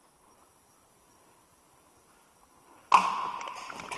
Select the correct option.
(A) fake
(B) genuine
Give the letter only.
B